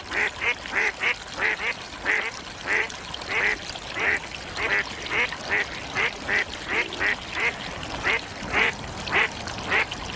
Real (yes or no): yes